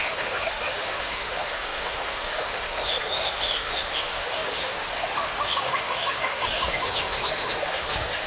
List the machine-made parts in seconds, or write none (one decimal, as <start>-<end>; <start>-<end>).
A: 0.0-8.3